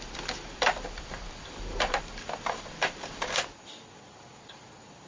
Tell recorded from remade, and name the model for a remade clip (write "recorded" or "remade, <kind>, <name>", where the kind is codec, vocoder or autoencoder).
remade, vocoder, BigVGAN v2